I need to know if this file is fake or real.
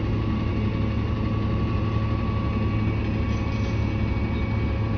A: real